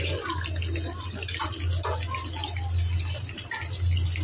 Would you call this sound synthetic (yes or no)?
no